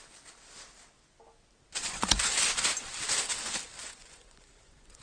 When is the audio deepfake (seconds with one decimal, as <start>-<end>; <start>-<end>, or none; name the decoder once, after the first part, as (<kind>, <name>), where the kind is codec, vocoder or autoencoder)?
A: 1.8-2.4 (vocoder, Vocos); 3.8-5.0